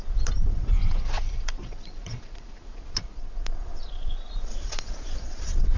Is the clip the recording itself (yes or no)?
no